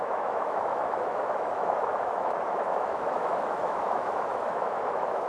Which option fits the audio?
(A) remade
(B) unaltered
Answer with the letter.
A